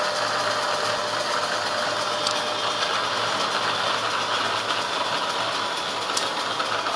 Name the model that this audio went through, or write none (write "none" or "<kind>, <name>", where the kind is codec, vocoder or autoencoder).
none